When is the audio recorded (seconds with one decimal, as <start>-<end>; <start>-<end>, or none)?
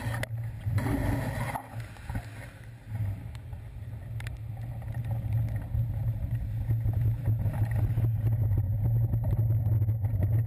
0.0-10.5